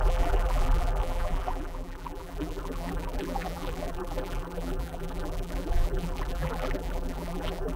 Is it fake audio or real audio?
fake